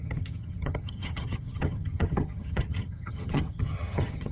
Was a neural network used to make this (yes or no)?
yes